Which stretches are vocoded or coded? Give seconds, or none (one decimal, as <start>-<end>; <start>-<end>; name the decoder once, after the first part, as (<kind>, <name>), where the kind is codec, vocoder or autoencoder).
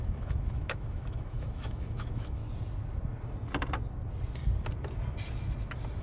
0.0-2.4 (autoencoder, DAC-VAE)